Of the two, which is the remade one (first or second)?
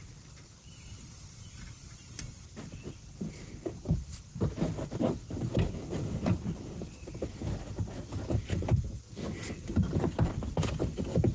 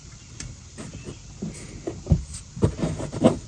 first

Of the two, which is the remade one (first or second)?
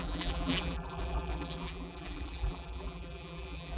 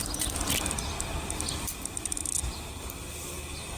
first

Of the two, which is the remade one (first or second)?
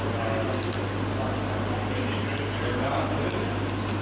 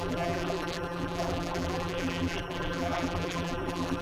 second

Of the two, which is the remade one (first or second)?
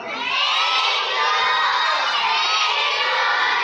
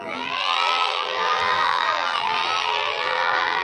second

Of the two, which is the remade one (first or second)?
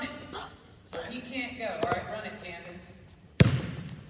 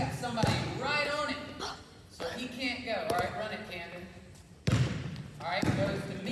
first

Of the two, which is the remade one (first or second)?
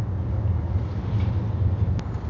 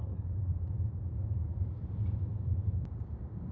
second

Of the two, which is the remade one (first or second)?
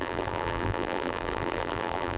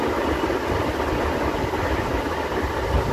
first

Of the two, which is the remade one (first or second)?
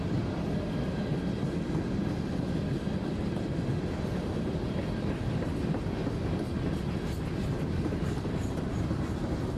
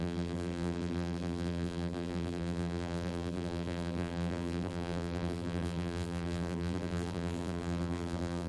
second